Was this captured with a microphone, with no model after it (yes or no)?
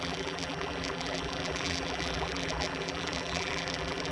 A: no